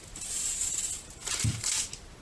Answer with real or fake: real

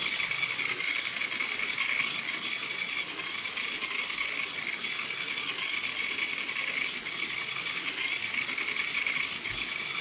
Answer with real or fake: real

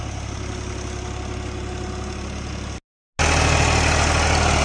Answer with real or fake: real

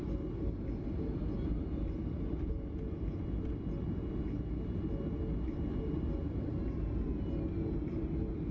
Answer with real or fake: real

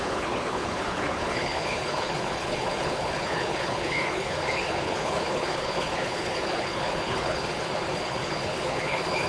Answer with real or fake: fake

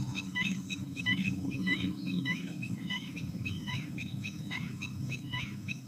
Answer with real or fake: fake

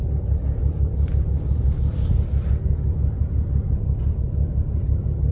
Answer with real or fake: real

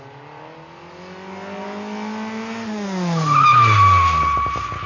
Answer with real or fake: real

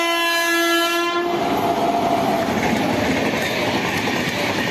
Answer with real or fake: real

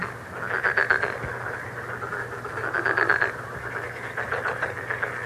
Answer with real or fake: real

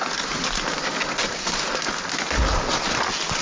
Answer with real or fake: real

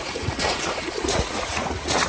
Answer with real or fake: fake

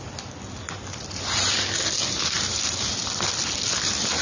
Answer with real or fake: real